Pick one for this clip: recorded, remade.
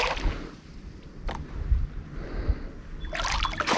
recorded